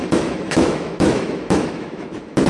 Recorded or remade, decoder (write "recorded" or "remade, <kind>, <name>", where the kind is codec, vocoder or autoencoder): remade, autoencoder, DAC-VAE